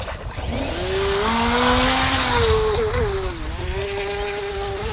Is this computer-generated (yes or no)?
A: no